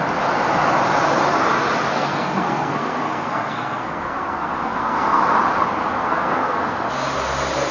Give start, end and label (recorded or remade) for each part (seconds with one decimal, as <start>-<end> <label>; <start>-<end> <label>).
0.0-1.9 recorded; 1.9-5.2 remade; 5.2-6.0 recorded; 6.0-6.9 remade; 6.9-7.7 recorded